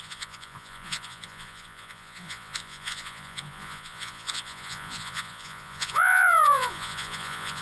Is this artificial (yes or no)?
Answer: yes